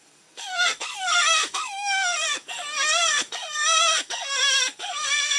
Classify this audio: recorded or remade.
remade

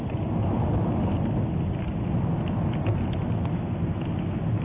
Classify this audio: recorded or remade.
recorded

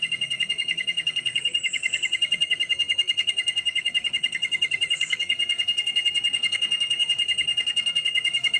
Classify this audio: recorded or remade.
remade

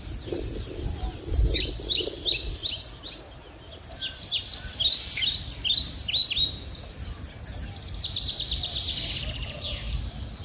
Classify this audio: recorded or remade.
recorded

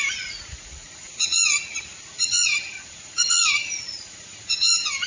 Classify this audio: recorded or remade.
remade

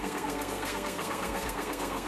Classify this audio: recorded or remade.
remade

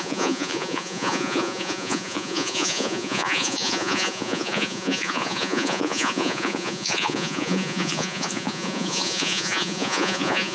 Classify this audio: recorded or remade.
remade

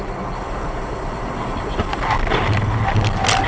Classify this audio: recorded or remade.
recorded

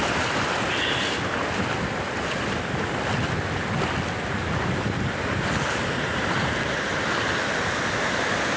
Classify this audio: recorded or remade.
recorded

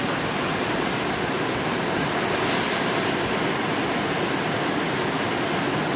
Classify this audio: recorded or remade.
recorded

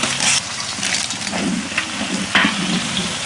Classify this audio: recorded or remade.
recorded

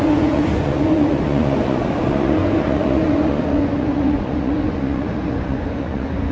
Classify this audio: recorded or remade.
remade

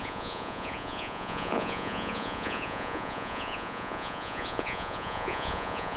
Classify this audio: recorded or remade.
remade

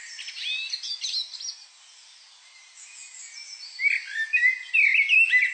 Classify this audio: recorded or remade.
recorded